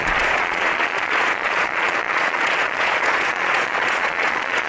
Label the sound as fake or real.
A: fake